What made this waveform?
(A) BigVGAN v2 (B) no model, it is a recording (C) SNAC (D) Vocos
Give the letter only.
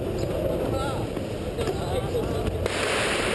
B